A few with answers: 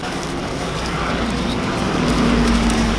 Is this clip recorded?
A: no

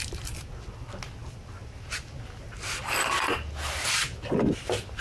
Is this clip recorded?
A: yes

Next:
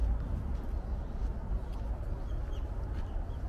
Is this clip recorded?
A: yes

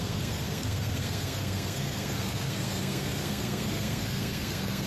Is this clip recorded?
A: no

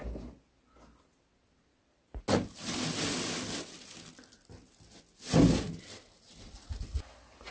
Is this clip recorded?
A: yes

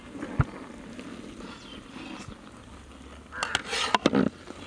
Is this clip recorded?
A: yes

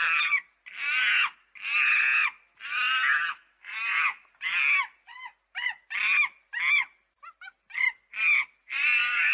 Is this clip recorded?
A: yes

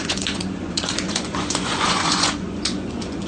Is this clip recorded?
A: no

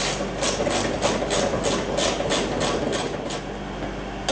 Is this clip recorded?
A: yes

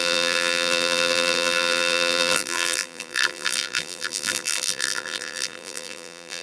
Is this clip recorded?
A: no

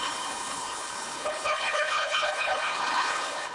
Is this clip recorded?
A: no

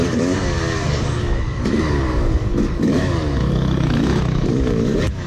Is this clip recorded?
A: no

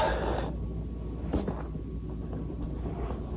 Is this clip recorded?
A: yes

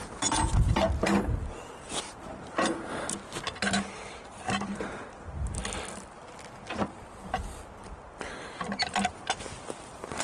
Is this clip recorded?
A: yes